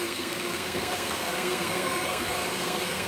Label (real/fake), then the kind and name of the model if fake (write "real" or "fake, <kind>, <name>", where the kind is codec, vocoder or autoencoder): fake, codec, SNAC